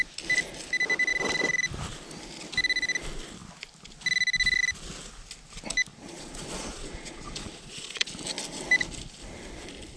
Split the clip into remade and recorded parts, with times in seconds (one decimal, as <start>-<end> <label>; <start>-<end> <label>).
0.0-5.9 recorded; 5.9-8.1 remade; 8.1-10.0 recorded